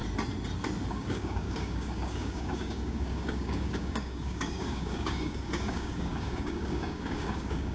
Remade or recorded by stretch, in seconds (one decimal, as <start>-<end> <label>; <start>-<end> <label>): 0.0-0.9 recorded; 0.9-7.7 remade